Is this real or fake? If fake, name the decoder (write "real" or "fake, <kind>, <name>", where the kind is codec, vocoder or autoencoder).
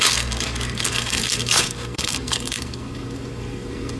fake, codec, SNAC